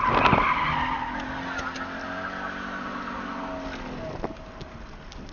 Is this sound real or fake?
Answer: real